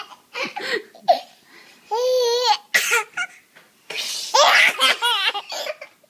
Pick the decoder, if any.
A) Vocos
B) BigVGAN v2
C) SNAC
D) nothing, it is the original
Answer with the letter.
D